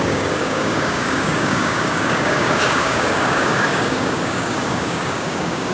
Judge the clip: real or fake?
fake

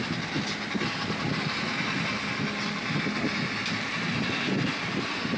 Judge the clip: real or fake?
real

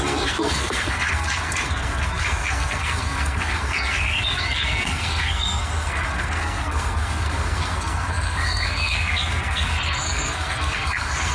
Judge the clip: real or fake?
fake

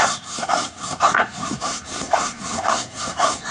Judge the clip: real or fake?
fake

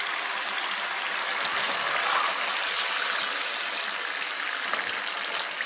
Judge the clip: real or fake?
real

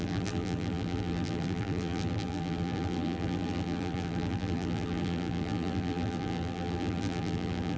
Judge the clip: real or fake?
fake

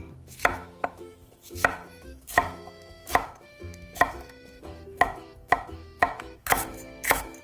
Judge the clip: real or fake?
fake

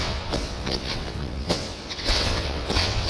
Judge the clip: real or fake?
fake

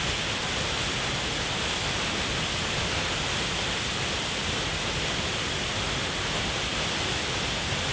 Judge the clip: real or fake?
real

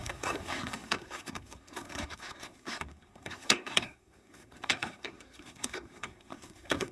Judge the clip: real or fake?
fake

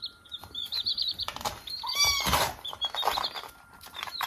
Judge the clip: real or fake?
fake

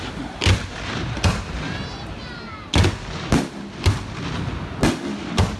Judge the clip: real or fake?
real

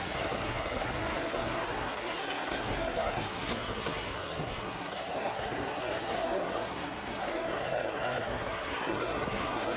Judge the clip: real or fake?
fake